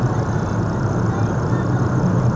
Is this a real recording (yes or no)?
yes